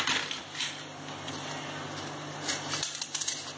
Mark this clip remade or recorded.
recorded